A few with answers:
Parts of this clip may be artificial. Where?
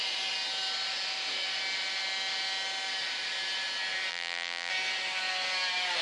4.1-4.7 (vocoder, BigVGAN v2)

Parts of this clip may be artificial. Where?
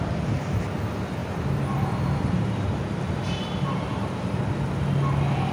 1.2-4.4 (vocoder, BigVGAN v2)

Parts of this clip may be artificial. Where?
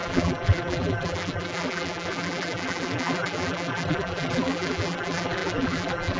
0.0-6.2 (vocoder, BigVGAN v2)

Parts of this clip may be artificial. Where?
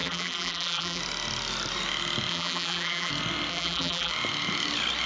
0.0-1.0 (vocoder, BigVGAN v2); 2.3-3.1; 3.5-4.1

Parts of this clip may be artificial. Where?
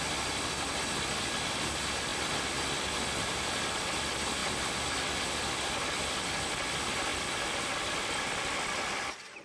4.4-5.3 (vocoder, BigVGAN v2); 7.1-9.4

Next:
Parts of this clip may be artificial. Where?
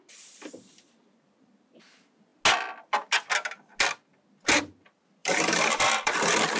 5.2-6.6 (vocoder, BigVGAN v2)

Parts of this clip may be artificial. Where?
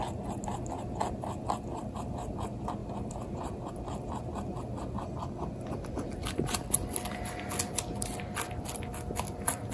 none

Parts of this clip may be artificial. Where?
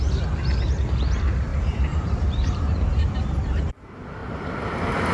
1.5-3.7 (vocoder, BigVGAN v2); 4.2-5.1